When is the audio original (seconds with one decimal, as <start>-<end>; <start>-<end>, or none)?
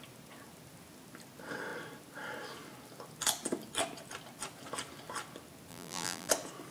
0.0-5.7; 6.3-6.7